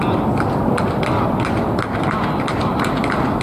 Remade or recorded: recorded